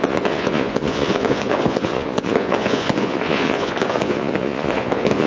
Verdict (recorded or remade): remade